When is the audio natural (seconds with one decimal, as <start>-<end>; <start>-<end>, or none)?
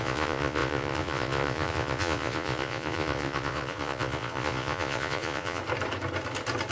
5.6-6.7